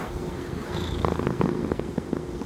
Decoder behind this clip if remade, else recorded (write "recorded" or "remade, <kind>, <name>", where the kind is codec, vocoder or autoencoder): remade, codec, SNAC